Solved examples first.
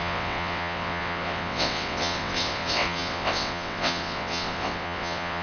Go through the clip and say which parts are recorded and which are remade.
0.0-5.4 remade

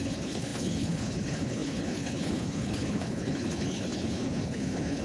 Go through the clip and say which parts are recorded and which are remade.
0.0-5.0 remade

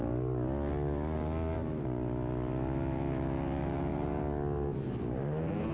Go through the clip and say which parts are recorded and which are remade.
0.0-5.7 recorded

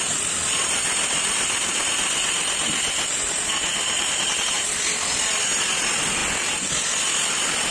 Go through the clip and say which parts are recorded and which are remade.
0.0-3.7 recorded; 3.7-4.8 remade; 4.8-7.7 recorded

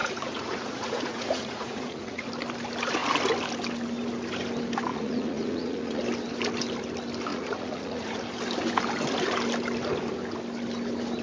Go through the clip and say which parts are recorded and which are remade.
0.0-2.3 remade; 2.3-4.9 recorded; 4.9-6.0 remade; 6.0-7.3 recorded; 7.3-8.2 remade; 8.2-11.2 recorded

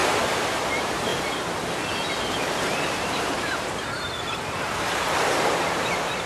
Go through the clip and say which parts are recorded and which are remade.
0.0-1.1 remade; 1.1-2.6 recorded; 2.6-6.3 remade

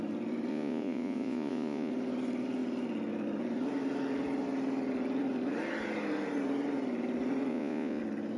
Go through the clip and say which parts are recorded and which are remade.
0.0-0.5 recorded; 0.5-1.9 remade; 1.9-7.5 recorded; 7.5-8.0 remade; 8.0-8.4 recorded